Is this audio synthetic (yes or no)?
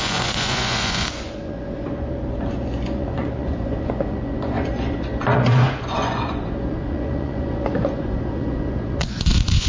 yes